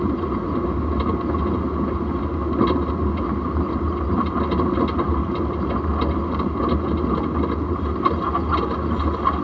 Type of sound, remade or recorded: recorded